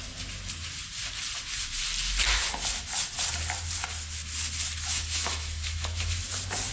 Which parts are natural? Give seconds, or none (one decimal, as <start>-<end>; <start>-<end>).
0.0-4.9; 6.2-6.7